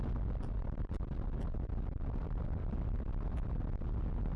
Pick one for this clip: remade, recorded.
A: recorded